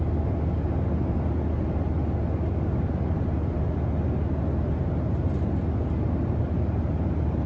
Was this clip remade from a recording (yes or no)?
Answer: no